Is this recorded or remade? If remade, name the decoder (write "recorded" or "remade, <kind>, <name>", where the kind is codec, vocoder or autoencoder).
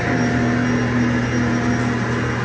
recorded